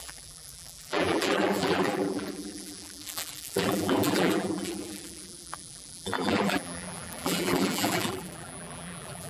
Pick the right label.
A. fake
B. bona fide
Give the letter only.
A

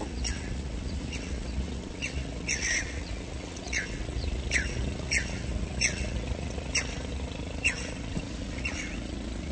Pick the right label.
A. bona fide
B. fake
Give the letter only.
B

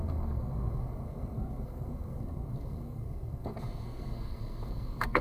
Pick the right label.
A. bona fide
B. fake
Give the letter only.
B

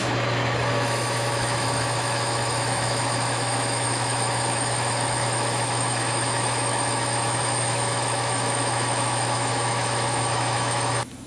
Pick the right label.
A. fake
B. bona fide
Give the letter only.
A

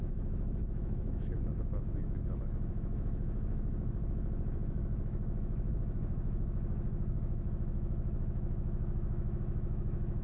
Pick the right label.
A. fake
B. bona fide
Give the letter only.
A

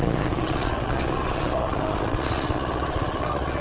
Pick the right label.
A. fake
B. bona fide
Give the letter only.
A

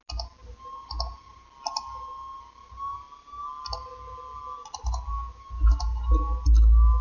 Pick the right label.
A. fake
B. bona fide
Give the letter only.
B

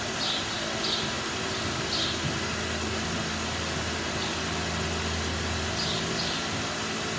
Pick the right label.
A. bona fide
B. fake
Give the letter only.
A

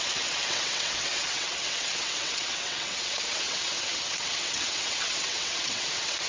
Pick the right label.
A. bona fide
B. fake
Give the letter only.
B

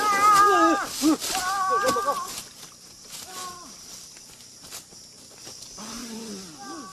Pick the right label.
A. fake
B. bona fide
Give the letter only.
B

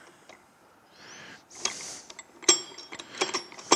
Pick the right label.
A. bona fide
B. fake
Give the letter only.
A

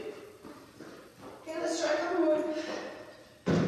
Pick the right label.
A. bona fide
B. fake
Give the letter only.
A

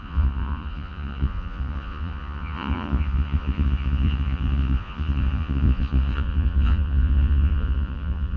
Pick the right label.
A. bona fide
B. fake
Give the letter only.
B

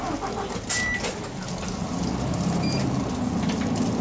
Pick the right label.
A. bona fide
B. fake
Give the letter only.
A